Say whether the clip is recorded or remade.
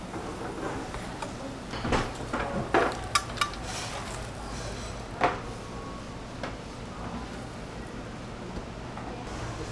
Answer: recorded